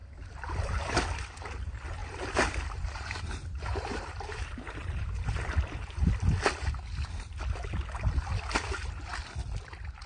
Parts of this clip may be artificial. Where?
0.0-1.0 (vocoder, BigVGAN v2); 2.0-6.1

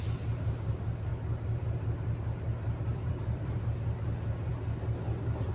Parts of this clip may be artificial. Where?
2.9-3.6 (vocoder, BigVGAN v2)

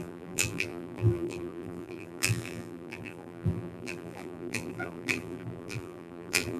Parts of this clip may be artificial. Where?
0.0-6.6 (vocoder, BigVGAN v2)

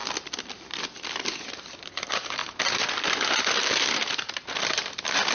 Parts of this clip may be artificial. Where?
0.0-2.4 (vocoder, BigVGAN v2); 3.7-5.3

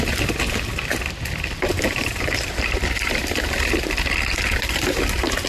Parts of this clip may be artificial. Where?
1.7-5.0 (vocoder, BigVGAN v2)